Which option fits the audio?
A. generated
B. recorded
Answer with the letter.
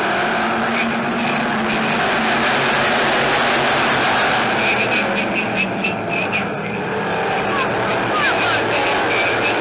B